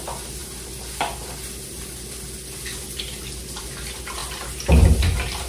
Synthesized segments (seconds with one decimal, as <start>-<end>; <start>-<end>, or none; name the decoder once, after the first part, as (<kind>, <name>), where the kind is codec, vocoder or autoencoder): none